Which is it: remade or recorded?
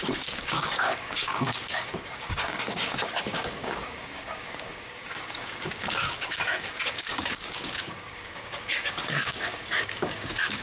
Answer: remade